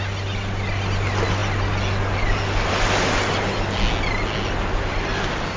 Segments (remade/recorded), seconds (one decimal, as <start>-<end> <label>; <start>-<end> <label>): 0.0-5.6 recorded